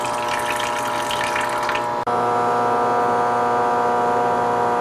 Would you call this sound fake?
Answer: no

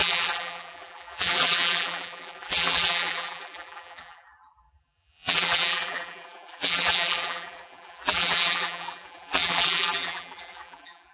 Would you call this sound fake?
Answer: yes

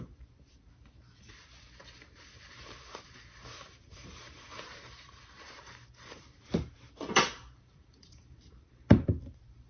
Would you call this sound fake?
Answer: yes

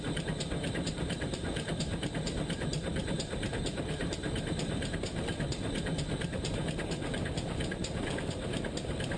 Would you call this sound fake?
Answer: yes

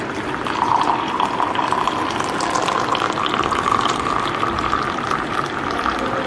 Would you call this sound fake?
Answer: no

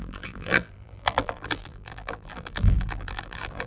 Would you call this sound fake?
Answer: yes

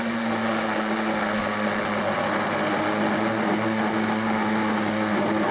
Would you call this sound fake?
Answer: no